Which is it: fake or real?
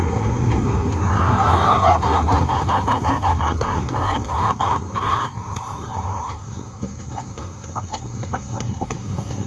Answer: fake